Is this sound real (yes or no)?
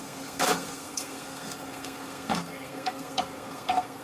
no